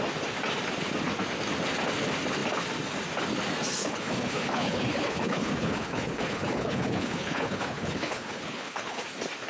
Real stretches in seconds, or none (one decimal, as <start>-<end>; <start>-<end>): 0.0-3.8; 9.0-9.5